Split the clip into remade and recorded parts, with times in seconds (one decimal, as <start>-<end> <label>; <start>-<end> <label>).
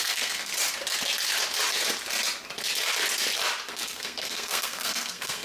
0.0-0.5 remade; 0.5-3.7 recorded; 3.7-5.4 remade